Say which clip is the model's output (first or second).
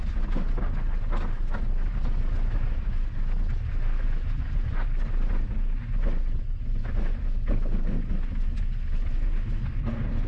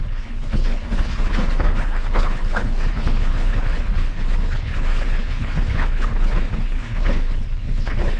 second